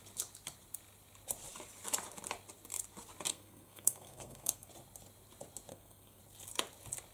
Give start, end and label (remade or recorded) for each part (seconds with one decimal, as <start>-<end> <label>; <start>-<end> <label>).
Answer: 0.0-3.3 recorded; 3.3-4.7 remade; 4.7-5.7 recorded; 5.7-6.2 remade; 6.2-7.1 recorded